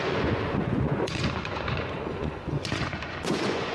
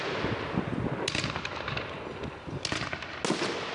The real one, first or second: second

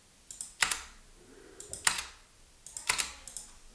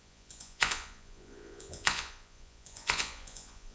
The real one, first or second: first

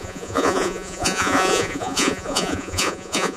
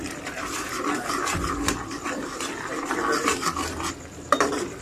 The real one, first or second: second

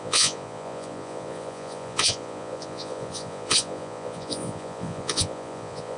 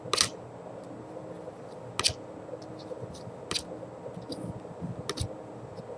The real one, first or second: second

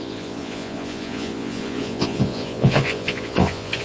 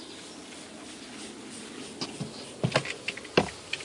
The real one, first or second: second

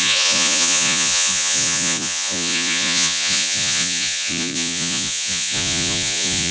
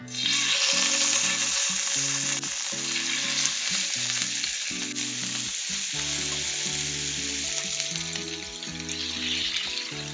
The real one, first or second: second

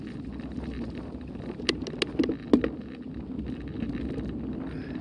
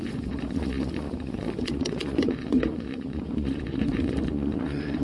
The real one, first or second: first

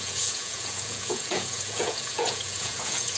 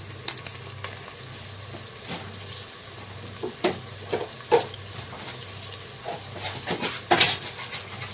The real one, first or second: second